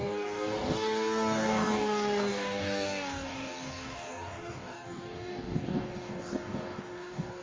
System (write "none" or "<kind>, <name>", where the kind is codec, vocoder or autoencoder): codec, DAC